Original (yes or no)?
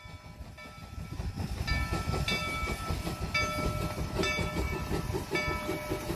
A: yes